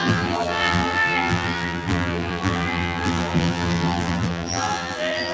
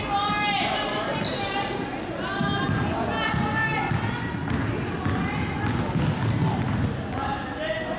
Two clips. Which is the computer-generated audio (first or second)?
first